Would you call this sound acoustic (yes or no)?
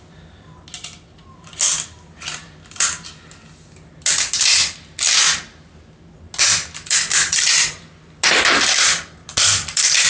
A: yes